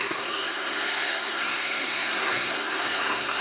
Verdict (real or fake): fake